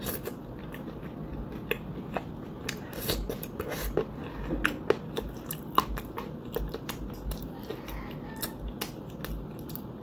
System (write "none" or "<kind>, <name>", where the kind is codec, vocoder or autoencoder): none